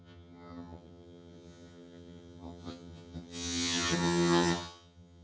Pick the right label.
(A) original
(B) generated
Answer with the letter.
B